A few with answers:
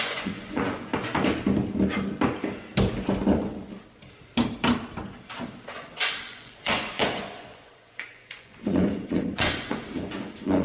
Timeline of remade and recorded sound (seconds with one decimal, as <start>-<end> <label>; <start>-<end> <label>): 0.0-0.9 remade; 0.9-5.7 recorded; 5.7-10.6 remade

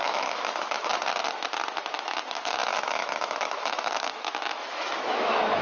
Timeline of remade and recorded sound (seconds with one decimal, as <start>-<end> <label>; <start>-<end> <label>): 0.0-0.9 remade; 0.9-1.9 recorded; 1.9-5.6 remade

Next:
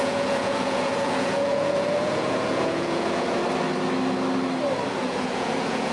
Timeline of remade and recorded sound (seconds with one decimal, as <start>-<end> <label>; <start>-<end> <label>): 0.0-3.4 remade; 3.4-5.0 recorded; 5.0-5.9 remade

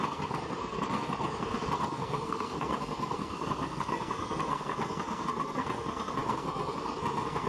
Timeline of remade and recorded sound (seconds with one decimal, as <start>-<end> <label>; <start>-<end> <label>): 0.0-7.5 remade